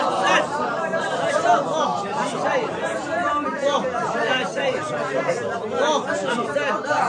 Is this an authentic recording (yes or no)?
no